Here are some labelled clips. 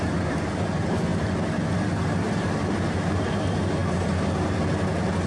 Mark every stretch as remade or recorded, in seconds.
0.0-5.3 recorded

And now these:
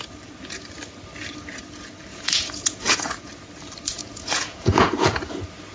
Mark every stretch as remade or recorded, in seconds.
0.0-2.1 recorded; 2.1-3.3 remade; 3.3-4.0 recorded; 4.0-5.2 remade; 5.2-5.7 recorded